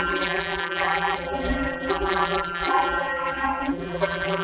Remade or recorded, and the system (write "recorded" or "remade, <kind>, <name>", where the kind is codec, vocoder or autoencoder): remade, vocoder, BigVGAN v2